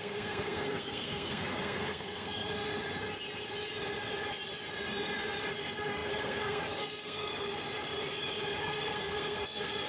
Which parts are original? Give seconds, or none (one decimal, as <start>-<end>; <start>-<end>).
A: 2.7-5.6; 7.3-8.6